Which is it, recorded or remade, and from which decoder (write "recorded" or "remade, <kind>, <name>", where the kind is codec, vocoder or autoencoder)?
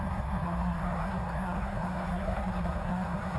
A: remade, codec, SNAC